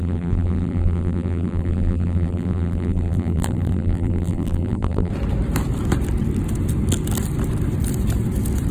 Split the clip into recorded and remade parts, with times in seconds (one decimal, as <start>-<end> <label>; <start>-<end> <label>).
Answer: 0.0-5.1 remade; 5.1-8.7 recorded